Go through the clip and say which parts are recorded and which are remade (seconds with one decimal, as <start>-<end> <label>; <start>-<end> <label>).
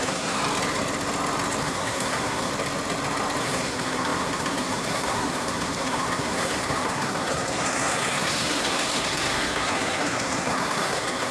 0.0-0.4 remade; 0.4-1.6 recorded; 1.6-2.5 remade; 2.5-3.4 recorded; 3.4-11.3 remade